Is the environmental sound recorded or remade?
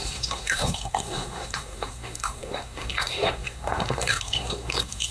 remade